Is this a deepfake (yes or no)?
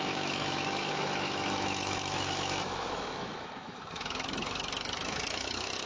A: yes